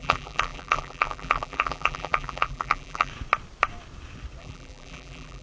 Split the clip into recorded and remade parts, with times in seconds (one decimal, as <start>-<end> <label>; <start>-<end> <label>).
0.0-3.1 remade; 3.1-4.4 recorded; 4.4-5.4 remade